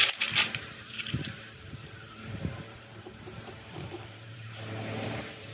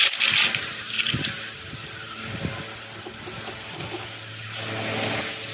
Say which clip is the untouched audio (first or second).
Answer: second